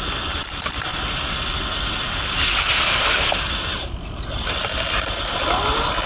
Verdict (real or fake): real